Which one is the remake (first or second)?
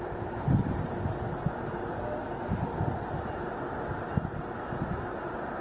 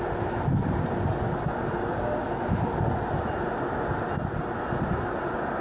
first